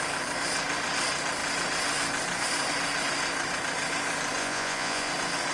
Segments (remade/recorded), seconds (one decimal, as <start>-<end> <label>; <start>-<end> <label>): 0.0-4.4 recorded; 4.4-5.1 remade; 5.1-5.5 recorded